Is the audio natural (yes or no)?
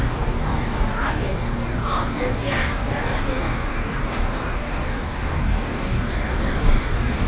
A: no